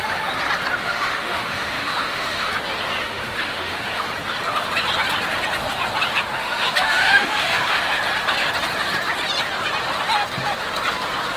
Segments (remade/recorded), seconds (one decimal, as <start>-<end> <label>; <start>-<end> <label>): 0.0-0.8 recorded; 0.8-2.5 remade; 2.5-3.0 recorded; 3.0-4.0 remade; 4.0-6.4 recorded; 6.4-8.0 remade; 8.0-11.4 recorded